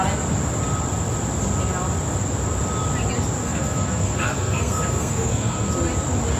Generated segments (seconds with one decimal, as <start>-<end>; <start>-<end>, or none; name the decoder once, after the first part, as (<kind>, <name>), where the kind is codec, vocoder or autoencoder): 3.4-5.7 (codec, SNAC)